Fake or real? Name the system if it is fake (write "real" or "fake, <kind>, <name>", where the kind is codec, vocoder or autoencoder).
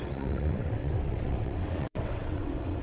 fake, vocoder, WaveNeXt